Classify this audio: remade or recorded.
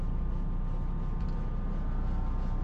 recorded